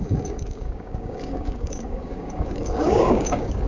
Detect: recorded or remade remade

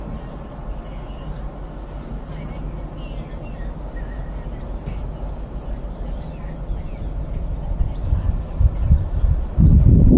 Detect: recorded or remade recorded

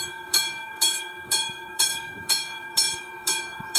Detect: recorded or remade remade